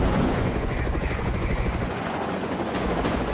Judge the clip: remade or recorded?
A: remade